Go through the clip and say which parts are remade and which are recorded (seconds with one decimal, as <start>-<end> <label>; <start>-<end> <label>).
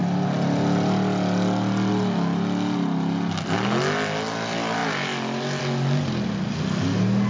0.0-7.3 recorded